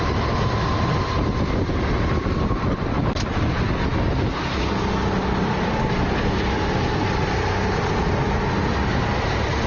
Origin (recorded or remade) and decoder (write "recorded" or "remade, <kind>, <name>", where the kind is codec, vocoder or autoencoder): recorded